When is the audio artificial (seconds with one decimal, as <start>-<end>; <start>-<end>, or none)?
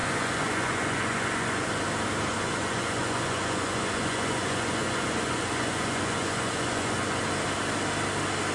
0.0-1.7; 2.3-7.2